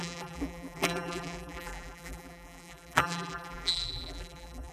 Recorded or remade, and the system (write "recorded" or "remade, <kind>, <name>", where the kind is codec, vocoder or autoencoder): remade, vocoder, BigVGAN v2